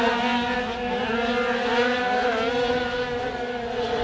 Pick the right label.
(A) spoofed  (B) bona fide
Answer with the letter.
B